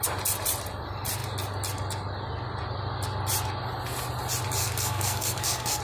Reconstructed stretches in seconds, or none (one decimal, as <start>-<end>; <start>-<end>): 4.6-5.8